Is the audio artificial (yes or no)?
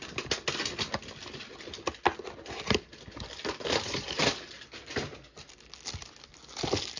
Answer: no